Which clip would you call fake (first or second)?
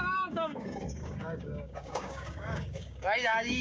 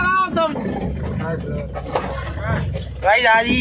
first